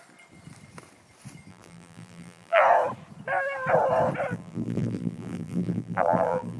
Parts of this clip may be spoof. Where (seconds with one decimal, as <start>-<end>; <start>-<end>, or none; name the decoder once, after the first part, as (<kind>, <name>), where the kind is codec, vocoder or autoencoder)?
1.5-2.6 (vocoder, BigVGAN v2); 4.3-6.6